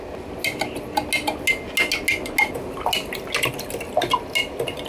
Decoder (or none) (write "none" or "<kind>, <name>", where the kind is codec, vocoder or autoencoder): none